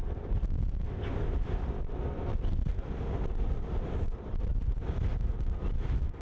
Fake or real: real